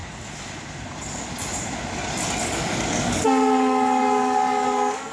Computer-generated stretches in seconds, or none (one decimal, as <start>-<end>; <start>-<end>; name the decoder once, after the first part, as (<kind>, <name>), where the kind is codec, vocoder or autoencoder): 2.4-5.1 (codec, DAC)